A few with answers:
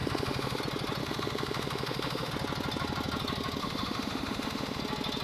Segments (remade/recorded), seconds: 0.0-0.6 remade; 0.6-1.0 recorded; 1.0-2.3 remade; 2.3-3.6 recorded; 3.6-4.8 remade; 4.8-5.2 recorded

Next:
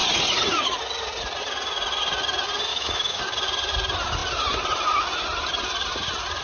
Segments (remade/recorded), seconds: 0.0-2.7 recorded; 2.7-3.2 remade; 3.2-6.4 recorded